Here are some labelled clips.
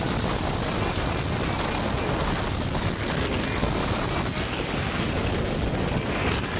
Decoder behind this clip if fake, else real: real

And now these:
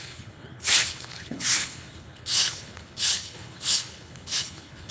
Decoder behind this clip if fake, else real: fake, codec, HILCodec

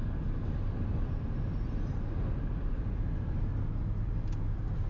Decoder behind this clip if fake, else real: real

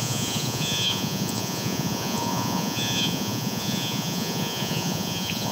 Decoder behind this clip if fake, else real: fake, vocoder, Vocos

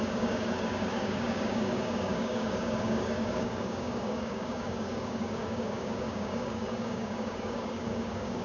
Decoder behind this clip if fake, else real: fake, codec, DAC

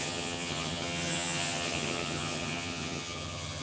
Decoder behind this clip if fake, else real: fake, vocoder, HiFi-GAN